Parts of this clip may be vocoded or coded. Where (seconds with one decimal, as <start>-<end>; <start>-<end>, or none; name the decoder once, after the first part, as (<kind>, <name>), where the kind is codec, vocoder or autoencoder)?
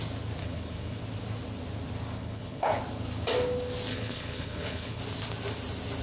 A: 0.4-1.0 (codec, HILCodec); 2.2-2.8; 3.9-5.0